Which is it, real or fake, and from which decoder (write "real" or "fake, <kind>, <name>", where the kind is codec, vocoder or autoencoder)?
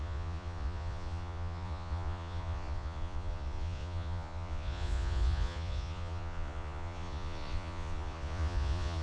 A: fake, vocoder, Vocos